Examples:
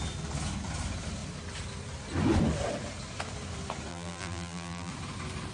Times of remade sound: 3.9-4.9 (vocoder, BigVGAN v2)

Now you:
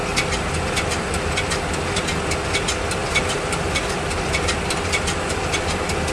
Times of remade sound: 3.0-3.8 (vocoder, BigVGAN v2)

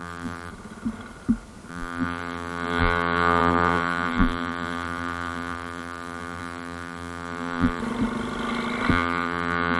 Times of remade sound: 0.0-0.5 (vocoder, BigVGAN v2); 1.7-7.8; 8.9-9.8

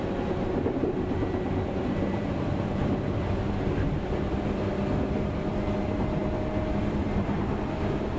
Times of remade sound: 0.0-6.2 (vocoder, BigVGAN v2); 6.8-8.2

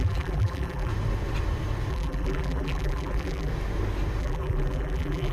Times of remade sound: 0.0-0.9 (vocoder, BigVGAN v2); 1.9-3.5; 4.2-5.3

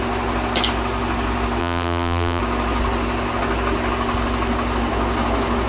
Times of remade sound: 1.6-2.4 (vocoder, BigVGAN v2)

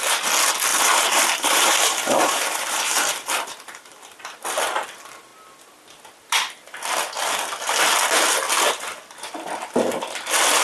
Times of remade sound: 0.7-4.2 (vocoder, BigVGAN v2)

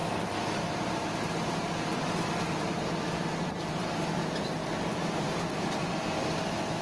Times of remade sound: 0.0-4.1 (vocoder, BigVGAN v2); 4.6-5.9